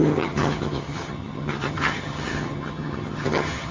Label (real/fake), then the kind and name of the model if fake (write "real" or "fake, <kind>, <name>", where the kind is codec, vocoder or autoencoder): fake, vocoder, HiFi-GAN